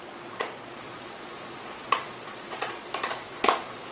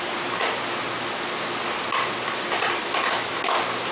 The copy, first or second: first